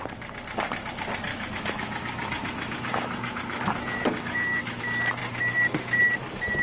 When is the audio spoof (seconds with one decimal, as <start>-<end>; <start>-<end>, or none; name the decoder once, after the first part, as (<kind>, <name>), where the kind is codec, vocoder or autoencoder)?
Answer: 1.3-4.8 (autoencoder, DAC-VAE)